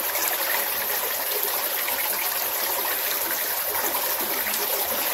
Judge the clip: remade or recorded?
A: recorded